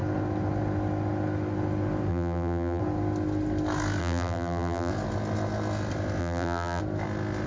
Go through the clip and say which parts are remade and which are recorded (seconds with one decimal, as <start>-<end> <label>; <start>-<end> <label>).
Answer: 0.0-2.1 recorded; 2.1-2.8 remade; 2.8-4.0 recorded; 4.0-4.9 remade; 4.9-6.2 recorded; 6.2-6.8 remade; 6.8-7.5 recorded